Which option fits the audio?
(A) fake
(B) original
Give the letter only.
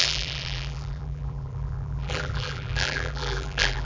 A